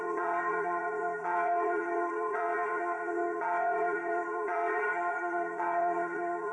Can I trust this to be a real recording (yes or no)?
no